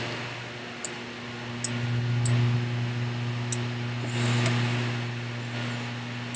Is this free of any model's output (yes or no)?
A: yes